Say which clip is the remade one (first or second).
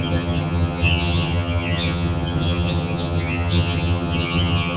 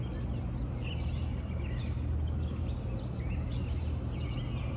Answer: first